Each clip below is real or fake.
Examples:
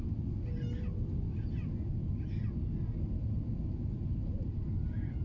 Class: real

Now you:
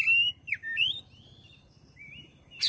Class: real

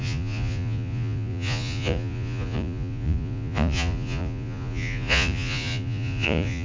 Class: fake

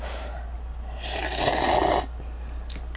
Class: real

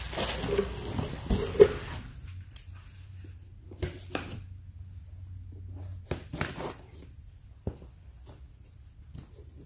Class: real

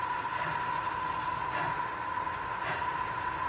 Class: real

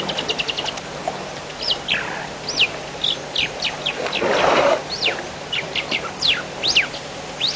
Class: real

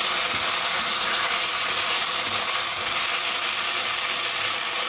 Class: real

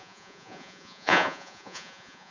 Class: fake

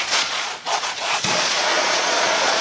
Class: fake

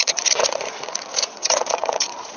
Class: fake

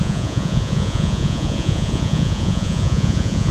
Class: fake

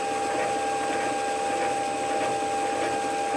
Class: real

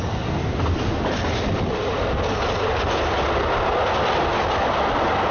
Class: real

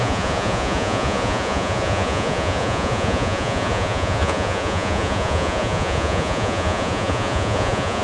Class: fake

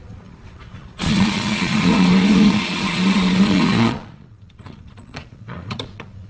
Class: fake